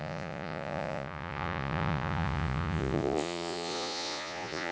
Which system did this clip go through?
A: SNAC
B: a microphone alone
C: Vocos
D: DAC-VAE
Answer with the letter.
C